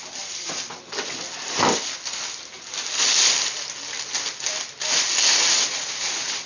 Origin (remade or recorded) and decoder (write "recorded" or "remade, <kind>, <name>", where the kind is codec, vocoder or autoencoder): recorded